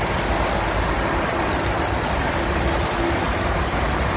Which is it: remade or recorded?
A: recorded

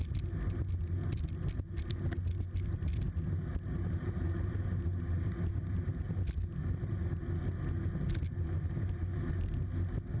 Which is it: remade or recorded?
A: recorded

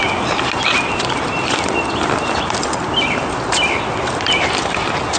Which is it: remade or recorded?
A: recorded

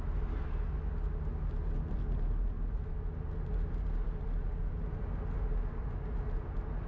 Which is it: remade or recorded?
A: recorded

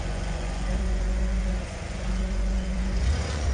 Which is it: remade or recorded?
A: remade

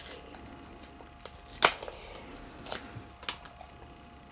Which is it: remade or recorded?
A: recorded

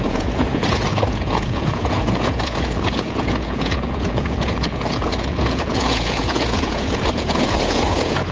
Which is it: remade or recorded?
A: remade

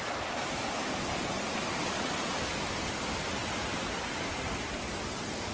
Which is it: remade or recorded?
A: recorded